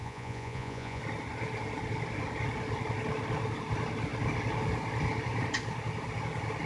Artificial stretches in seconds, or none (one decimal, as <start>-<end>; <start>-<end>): 0.0-1.0